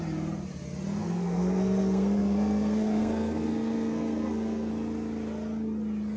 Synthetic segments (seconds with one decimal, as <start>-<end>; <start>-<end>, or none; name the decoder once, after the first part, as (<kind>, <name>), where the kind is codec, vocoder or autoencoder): 1.0-4.7 (codec, SNAC)